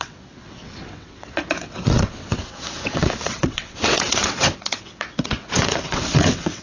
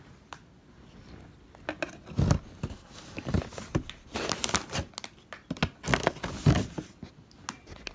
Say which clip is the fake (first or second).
first